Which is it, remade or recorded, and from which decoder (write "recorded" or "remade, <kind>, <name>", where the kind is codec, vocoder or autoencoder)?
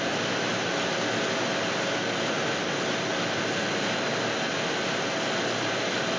recorded